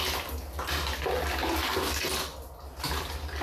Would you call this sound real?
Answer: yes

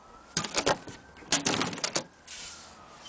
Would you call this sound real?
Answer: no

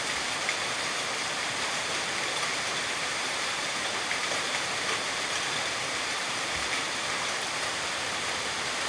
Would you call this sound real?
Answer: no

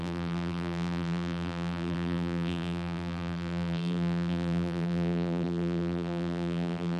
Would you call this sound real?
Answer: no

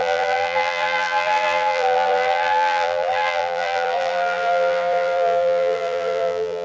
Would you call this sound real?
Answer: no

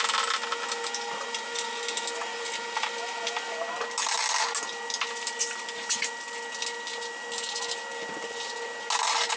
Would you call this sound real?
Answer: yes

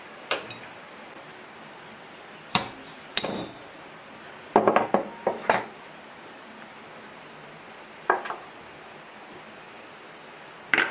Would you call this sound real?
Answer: no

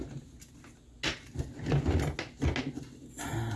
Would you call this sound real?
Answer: yes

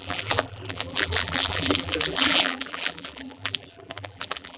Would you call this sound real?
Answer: no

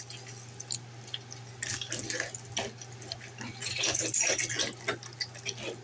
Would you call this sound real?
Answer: yes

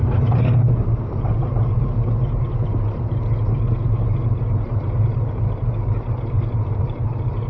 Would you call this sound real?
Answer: no